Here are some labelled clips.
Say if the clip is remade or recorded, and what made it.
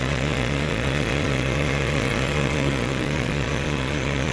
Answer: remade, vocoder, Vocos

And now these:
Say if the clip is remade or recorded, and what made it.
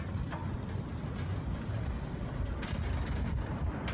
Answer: recorded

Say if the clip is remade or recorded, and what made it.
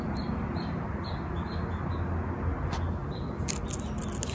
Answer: recorded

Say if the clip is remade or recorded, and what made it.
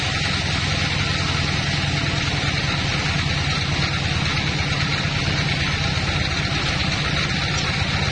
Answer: recorded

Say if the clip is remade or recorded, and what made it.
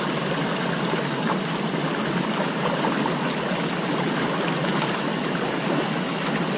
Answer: recorded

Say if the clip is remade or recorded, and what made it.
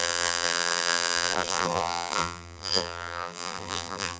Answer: remade, vocoder, BigVGAN v2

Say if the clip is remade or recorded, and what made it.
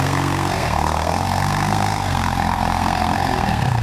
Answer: remade, codec, SNAC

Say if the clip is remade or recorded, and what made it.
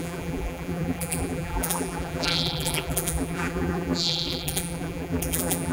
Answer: remade, vocoder, BigVGAN v2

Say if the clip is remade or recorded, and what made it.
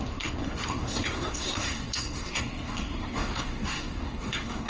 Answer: remade, codec, SNAC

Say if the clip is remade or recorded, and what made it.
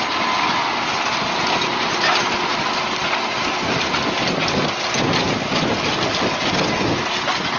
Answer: recorded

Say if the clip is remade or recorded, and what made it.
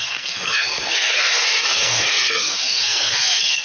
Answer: remade, codec, SNAC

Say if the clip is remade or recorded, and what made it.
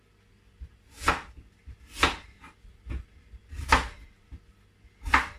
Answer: recorded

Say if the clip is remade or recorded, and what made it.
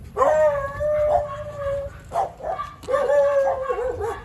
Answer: recorded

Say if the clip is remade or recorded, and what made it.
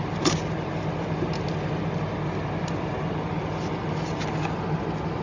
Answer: recorded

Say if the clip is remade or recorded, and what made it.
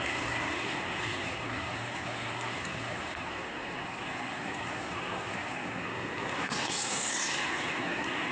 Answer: remade, codec, SNAC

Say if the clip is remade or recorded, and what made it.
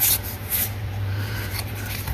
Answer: remade, vocoder, BigVGAN v2